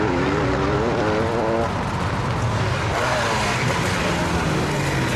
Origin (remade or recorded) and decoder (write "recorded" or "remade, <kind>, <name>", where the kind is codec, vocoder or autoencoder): recorded